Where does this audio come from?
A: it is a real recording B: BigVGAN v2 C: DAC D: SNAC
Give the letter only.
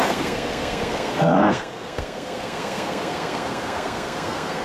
D